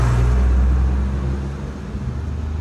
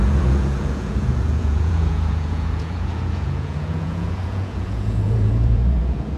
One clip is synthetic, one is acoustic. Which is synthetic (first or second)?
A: second